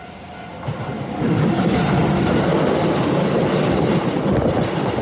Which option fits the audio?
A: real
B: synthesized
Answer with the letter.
A